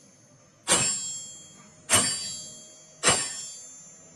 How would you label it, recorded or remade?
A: recorded